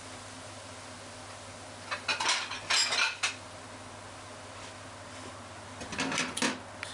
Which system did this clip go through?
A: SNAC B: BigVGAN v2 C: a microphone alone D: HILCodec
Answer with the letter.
C